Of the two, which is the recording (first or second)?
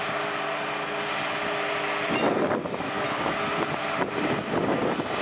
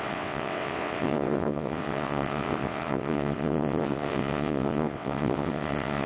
first